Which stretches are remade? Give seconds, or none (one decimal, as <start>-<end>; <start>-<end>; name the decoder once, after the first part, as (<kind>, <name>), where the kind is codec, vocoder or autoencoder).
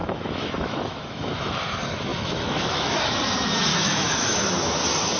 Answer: 0.0-1.6 (autoencoder, DAC-VAE); 2.1-3.0; 3.7-4.5